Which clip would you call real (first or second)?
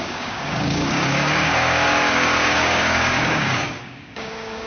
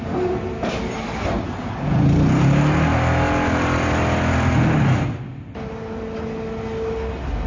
second